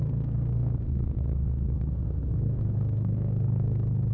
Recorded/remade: remade